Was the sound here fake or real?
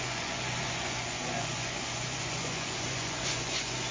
fake